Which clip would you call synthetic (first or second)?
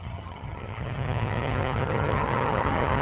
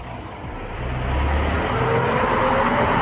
first